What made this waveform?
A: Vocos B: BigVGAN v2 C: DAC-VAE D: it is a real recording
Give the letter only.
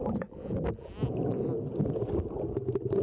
D